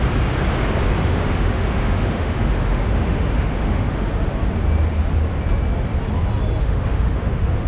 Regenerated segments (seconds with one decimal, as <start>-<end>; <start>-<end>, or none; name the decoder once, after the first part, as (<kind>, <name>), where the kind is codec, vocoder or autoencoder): 1.0-4.0 (autoencoder, DAC-VAE); 6.6-7.7